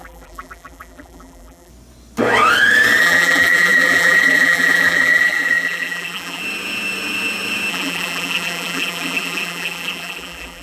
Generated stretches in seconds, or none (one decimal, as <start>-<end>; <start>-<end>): 0.0-1.7; 3.0-6.4; 7.7-10.6